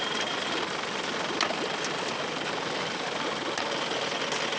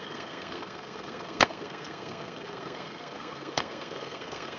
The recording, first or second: first